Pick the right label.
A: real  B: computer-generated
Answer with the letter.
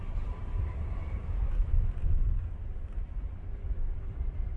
B